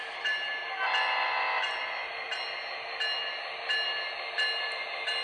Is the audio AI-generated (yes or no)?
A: no